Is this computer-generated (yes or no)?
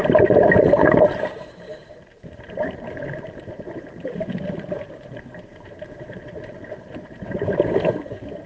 yes